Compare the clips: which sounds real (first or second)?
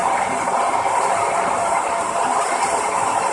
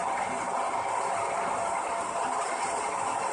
second